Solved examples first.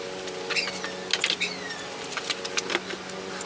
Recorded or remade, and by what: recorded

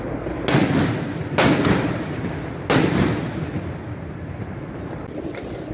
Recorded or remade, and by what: recorded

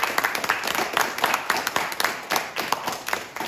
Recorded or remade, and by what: remade, vocoder, BigVGAN v2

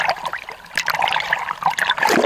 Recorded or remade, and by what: recorded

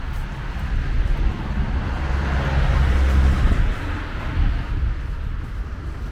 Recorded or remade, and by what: recorded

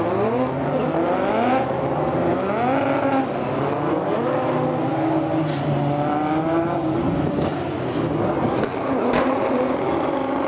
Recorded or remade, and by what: recorded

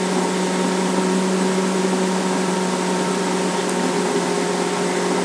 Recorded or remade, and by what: remade, vocoder, BigVGAN v2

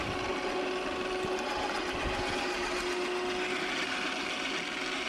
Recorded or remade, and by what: recorded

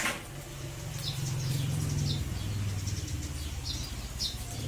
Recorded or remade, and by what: recorded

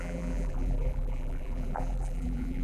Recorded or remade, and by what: remade, vocoder, BigVGAN v2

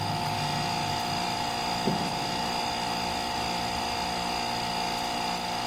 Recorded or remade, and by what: recorded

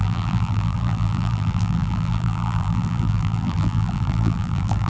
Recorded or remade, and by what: remade, vocoder, BigVGAN v2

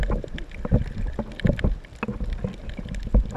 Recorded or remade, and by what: recorded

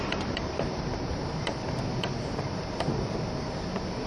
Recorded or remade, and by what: remade, vocoder, BigVGAN v2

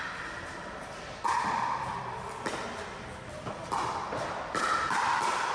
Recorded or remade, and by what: remade, vocoder, BigVGAN v2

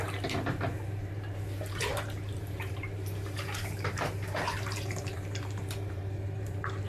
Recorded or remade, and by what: remade, vocoder, BigVGAN v2